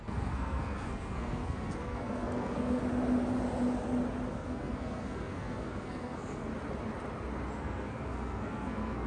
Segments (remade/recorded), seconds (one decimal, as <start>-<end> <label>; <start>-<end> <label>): 0.0-2.8 remade; 2.8-4.3 recorded; 4.3-6.5 remade; 6.5-7.6 recorded; 7.6-9.1 remade